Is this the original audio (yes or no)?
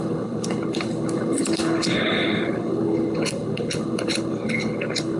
no